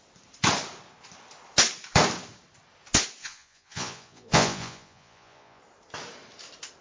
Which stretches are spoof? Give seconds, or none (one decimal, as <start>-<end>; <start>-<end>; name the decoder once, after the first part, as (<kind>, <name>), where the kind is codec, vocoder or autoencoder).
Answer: 3.2-5.6 (vocoder, Vocos)